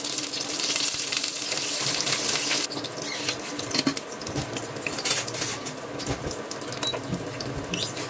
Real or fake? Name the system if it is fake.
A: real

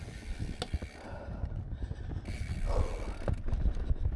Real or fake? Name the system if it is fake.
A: real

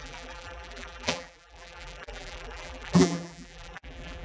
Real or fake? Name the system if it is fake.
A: fake, vocoder, BigVGAN v2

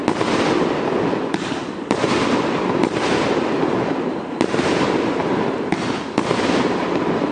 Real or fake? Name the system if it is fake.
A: real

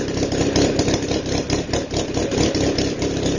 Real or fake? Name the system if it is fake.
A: real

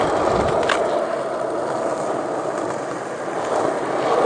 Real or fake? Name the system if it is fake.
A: real